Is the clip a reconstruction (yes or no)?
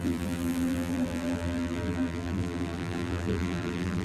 yes